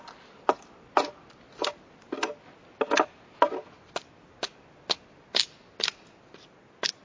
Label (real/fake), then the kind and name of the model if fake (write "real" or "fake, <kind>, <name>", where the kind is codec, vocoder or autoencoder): real